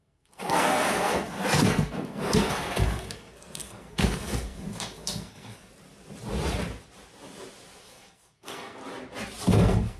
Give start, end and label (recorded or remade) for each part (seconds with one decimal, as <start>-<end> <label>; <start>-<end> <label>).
0.0-5.7 remade; 5.7-7.8 recorded; 7.8-8.8 remade; 8.8-9.5 recorded; 9.5-10.0 remade